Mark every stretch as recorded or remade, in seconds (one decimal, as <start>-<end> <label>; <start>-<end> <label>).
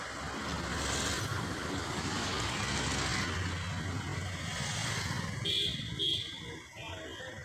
0.0-1.3 recorded; 1.3-2.6 remade; 2.6-7.4 recorded